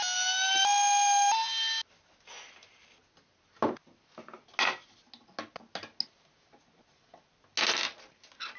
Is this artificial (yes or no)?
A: no